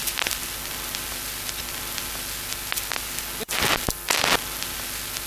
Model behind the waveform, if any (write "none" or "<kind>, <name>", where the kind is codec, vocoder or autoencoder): none